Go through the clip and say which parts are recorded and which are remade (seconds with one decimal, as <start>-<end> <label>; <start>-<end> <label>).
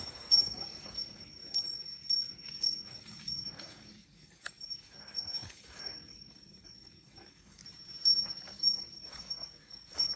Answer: 0.0-1.4 remade; 1.4-2.3 recorded; 2.3-7.6 remade; 7.6-8.2 recorded; 8.2-10.2 remade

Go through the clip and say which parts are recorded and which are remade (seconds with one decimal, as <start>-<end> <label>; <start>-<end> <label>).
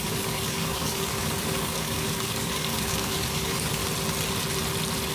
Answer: 0.0-3.8 remade; 3.8-5.1 recorded